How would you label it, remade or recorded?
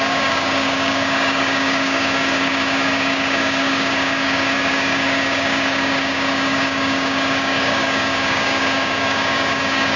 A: remade